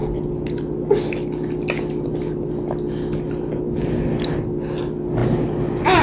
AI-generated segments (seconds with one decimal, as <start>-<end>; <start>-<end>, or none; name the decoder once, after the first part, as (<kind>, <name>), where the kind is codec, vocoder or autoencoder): none